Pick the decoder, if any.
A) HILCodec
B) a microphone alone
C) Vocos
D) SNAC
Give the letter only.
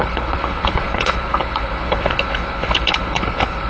A